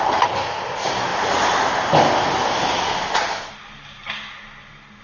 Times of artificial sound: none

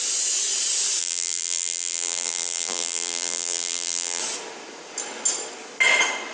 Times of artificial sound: 1.0-4.2 (vocoder, BigVGAN v2)

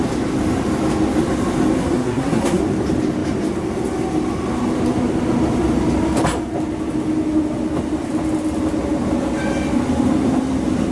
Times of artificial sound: 1.8-2.6 (codec, SNAC)

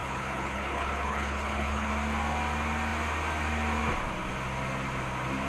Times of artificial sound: 0.0-1.9 (codec, HILCodec)

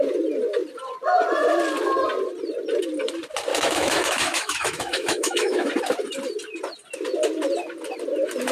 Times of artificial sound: 3.5-5.7 (autoencoder, DAC-VAE)

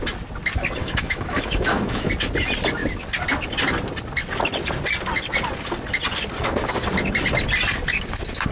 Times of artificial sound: 0.8-2.1 (autoencoder, DAC-VAE)